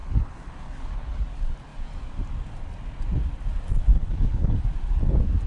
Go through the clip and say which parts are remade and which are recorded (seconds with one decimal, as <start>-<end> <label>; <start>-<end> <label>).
0.0-1.2 remade; 1.2-3.9 recorded; 3.9-4.6 remade; 4.6-5.5 recorded